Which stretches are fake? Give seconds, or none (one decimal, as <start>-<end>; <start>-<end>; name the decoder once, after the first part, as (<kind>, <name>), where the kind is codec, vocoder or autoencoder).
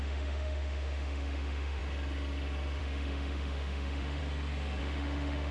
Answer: 0.0-1.8 (autoencoder, DAC-VAE); 2.8-4.2; 4.8-5.5